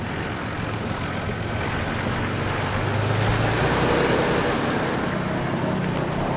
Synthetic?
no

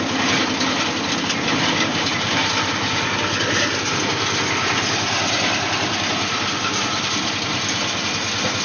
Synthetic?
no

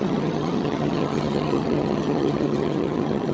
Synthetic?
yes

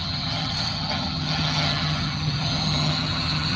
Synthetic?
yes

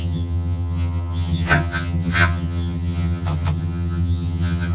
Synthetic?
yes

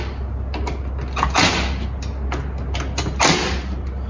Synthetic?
no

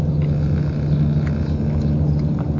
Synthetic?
no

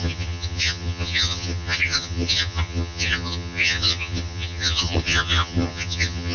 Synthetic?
yes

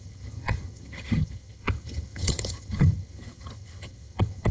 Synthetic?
yes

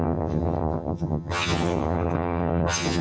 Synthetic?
yes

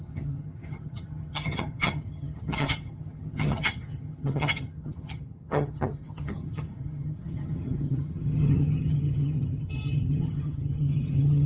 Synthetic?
yes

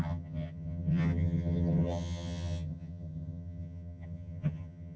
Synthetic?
yes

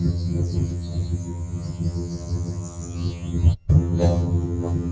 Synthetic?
yes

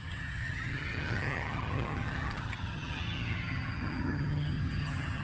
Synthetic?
yes